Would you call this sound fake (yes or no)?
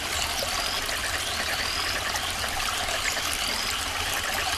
no